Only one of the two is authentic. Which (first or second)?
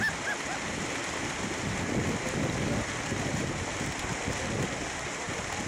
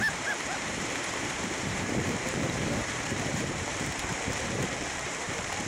first